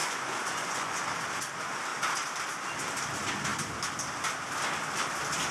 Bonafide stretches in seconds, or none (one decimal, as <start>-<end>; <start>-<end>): 1.0-5.5